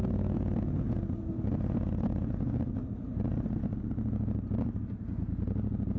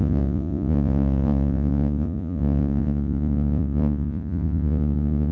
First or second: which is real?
first